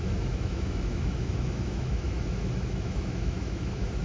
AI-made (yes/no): yes